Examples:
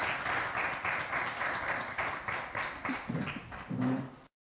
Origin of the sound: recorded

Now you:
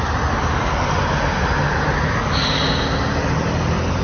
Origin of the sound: recorded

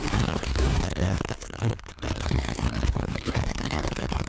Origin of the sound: remade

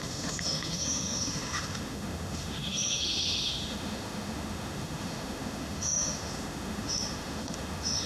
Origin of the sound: remade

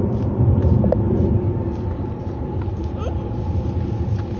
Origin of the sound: recorded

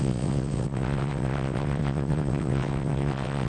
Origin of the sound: remade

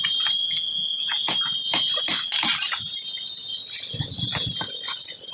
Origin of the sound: recorded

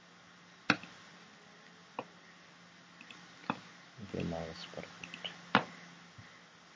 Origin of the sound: recorded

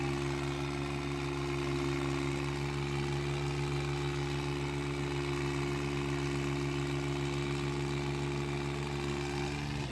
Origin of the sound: recorded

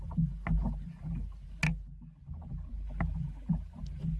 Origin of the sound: recorded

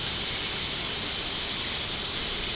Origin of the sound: recorded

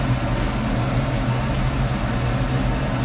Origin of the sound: recorded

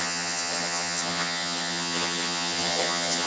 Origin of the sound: remade